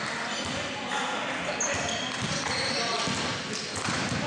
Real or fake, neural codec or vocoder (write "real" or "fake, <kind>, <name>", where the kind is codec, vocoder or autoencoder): real